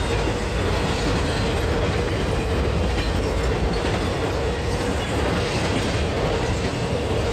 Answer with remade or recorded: recorded